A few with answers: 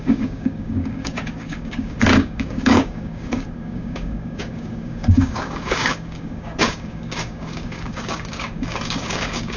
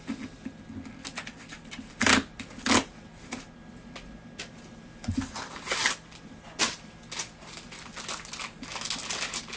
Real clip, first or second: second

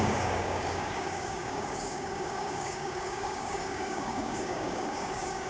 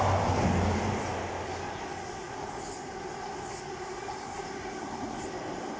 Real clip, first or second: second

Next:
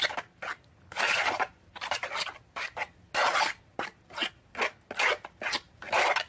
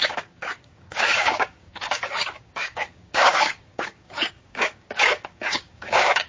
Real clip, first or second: first